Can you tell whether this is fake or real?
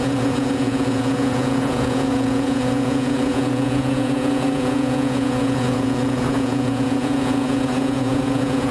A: fake